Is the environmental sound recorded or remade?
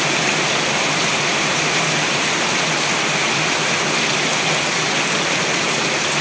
recorded